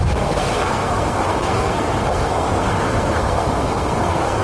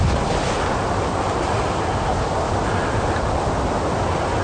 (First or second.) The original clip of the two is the second